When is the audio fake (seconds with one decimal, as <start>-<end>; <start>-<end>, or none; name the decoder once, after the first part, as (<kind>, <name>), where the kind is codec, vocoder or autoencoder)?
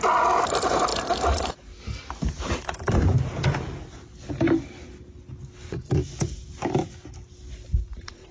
7.8-8.3 (vocoder, Vocos)